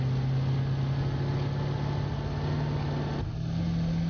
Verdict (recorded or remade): recorded